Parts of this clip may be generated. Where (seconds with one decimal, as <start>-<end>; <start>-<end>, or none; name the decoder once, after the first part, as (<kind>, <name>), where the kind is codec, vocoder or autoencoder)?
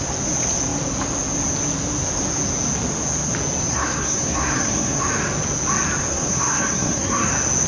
3.7-5.0 (codec, SNAC); 6.1-7.3